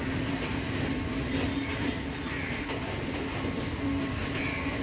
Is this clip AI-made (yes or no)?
no